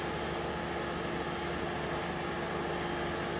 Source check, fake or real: real